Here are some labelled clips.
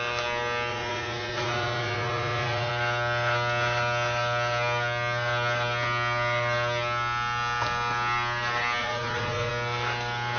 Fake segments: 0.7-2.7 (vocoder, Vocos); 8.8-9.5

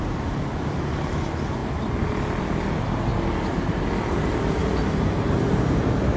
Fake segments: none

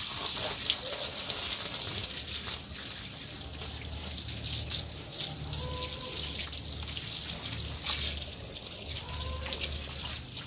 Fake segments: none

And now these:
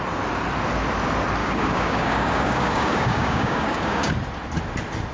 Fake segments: 1.4-4.1 (codec, DAC)